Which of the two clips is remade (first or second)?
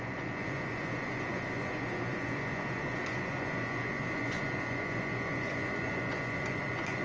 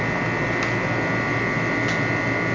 first